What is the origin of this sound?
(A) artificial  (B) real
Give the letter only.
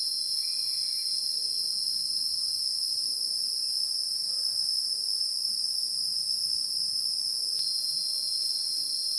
B